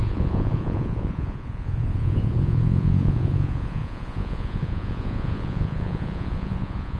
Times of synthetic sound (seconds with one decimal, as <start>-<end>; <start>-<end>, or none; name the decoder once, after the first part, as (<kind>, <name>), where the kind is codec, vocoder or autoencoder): 0.0-7.0 (vocoder, Vocos)